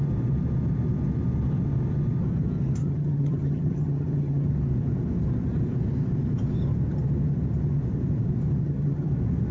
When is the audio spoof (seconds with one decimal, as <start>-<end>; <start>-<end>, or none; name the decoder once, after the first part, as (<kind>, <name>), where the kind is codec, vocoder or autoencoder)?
2.8-4.5 (vocoder, HiFi-GAN); 8.6-9.1